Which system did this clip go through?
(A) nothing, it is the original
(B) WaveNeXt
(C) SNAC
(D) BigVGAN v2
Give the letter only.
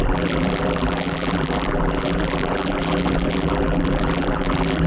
D